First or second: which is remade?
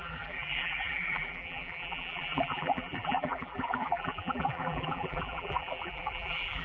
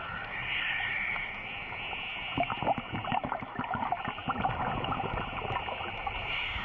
first